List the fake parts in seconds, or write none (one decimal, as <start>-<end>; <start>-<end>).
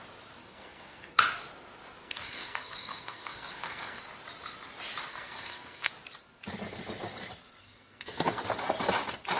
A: 0.4-1.2; 2.0-4.0; 5.1-5.9; 7.6-8.4